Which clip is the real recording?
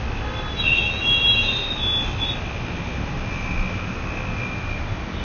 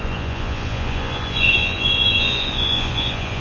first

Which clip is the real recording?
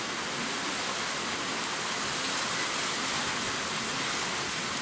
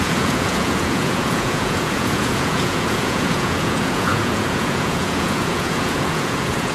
first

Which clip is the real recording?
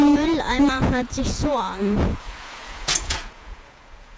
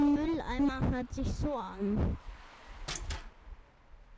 second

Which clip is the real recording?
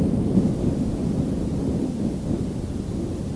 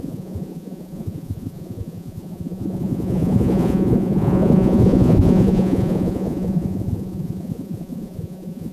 first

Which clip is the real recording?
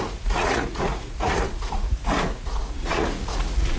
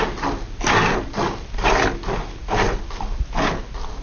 second